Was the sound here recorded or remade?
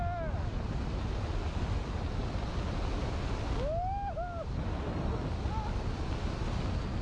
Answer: recorded